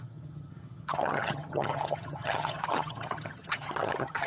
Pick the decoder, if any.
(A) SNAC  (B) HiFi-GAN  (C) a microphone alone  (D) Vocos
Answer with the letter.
B